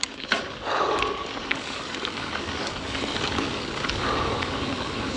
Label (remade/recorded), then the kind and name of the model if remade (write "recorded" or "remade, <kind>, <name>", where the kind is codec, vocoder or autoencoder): remade, codec, DAC